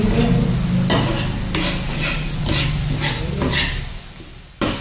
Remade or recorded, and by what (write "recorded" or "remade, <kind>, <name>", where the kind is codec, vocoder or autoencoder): recorded